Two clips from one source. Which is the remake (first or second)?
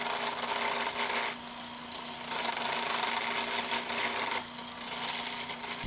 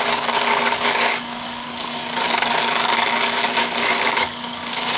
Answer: second